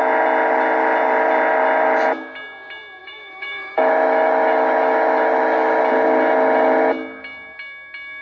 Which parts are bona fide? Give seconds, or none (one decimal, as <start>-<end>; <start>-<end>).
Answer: 0.0-3.0; 5.8-8.2